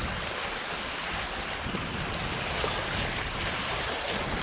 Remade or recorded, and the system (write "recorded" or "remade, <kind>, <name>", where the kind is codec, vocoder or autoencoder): recorded